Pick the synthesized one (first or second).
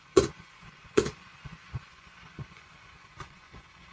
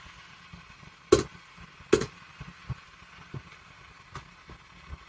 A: first